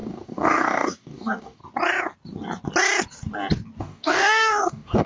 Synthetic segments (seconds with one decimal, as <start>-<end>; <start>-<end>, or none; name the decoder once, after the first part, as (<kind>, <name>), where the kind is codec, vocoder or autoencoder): 0.0-1.6 (codec, DAC); 3.8-5.1

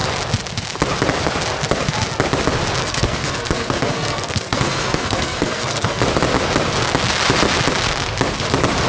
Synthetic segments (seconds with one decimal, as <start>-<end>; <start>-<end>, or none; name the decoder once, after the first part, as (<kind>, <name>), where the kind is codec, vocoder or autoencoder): 2.8-6.0 (codec, SNAC)

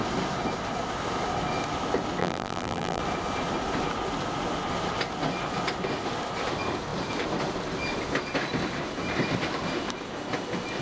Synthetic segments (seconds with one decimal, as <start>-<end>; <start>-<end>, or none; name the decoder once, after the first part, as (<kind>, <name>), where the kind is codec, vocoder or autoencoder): 2.2-3.0 (vocoder, BigVGAN v2)

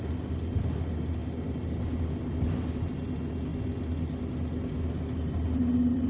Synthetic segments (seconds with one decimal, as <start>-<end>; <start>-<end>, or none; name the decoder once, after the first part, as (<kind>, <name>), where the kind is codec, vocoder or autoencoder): none

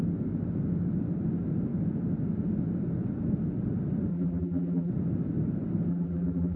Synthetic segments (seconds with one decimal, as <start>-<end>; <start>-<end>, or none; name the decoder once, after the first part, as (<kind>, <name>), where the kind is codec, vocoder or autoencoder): 4.1-4.9 (vocoder, BigVGAN v2); 5.9-6.6

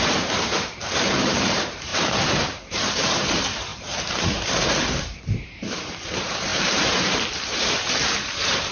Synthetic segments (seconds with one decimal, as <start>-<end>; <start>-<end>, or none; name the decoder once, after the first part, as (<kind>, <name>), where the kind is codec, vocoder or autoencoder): 0.0-8.7 (vocoder, BigVGAN v2)

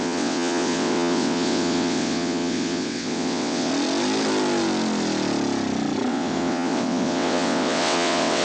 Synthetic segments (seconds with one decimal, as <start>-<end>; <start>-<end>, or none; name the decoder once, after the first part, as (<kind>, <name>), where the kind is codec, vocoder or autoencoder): 0.0-3.7 (vocoder, WaveNeXt); 6.1-8.4

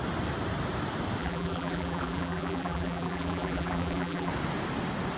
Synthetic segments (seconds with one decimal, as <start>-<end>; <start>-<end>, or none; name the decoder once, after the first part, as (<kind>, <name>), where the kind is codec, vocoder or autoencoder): 1.2-4.3 (vocoder, BigVGAN v2)